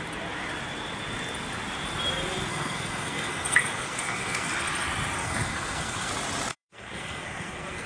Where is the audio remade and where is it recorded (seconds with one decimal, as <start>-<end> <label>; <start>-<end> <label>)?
0.0-2.5 recorded; 2.5-4.5 remade; 4.5-5.2 recorded; 5.2-6.1 remade; 6.1-6.5 recorded; 6.5-7.9 remade